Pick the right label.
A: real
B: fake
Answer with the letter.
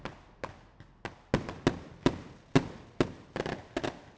A